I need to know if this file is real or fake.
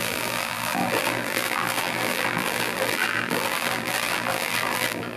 fake